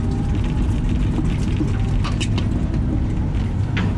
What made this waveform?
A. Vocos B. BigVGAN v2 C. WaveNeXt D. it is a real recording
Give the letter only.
D